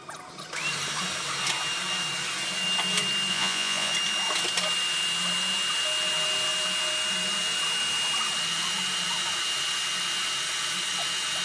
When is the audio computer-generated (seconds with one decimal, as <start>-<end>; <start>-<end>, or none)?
3.3-3.9